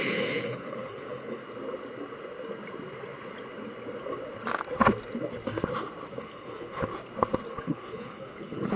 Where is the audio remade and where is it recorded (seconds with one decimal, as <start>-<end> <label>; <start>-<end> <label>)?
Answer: 0.0-1.4 remade; 1.4-6.2 recorded; 6.2-6.9 remade; 6.9-7.5 recorded; 7.5-8.8 remade